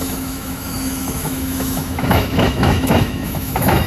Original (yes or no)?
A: no